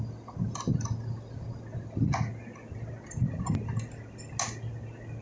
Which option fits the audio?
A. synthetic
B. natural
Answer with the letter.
B